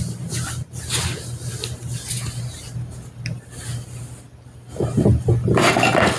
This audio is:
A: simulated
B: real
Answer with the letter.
B